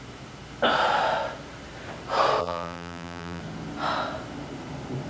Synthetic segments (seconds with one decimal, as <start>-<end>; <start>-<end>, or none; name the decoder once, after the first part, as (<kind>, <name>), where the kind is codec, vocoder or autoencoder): 2.4-3.4 (vocoder, BigVGAN v2)